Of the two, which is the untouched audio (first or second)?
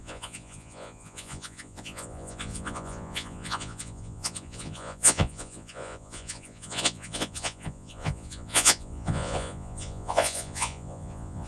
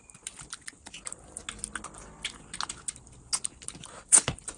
second